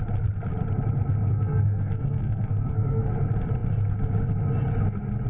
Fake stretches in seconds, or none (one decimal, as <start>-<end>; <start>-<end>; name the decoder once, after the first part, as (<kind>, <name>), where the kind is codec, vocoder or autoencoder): 1.3-3.1 (codec, SNAC)